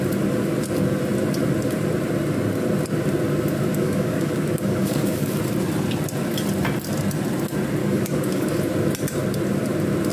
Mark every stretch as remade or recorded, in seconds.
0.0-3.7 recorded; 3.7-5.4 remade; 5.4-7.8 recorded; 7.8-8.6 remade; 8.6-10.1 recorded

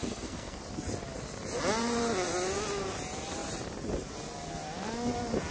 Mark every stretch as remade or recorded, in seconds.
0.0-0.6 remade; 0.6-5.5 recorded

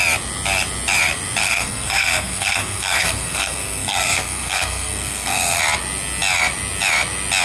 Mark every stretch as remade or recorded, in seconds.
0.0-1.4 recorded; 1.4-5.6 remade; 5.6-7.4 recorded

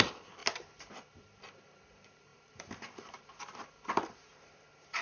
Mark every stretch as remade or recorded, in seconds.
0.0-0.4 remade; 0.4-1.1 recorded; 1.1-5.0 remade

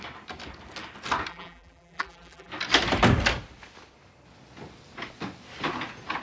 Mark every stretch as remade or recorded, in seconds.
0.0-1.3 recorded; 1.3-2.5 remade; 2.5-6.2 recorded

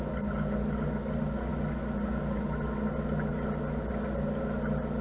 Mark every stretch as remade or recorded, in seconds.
0.0-5.0 recorded

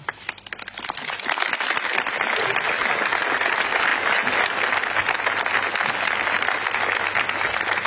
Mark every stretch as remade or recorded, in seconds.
0.0-7.9 recorded

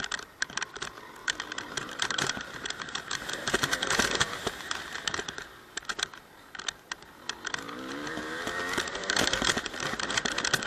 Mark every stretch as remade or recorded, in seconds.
0.0-1.2 recorded; 1.2-6.5 remade; 6.5-8.1 recorded; 8.1-8.6 remade; 8.6-9.0 recorded; 9.0-9.8 remade; 9.8-10.7 recorded